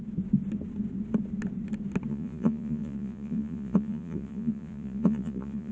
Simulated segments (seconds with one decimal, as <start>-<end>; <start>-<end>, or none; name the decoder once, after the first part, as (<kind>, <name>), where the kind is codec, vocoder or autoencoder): 2.1-5.7 (vocoder, Vocos)